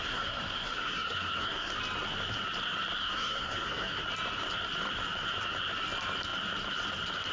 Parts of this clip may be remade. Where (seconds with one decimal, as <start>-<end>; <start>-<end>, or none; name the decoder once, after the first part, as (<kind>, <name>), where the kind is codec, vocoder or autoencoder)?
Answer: 0.0-1.7 (codec, SNAC); 3.0-3.9